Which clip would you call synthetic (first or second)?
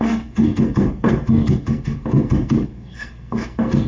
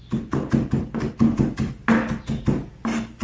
first